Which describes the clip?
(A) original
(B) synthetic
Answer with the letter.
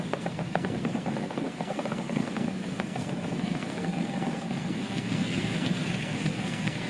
B